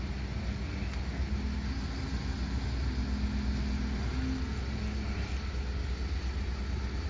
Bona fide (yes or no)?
yes